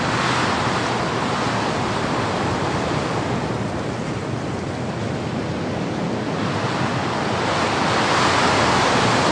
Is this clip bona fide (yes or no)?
yes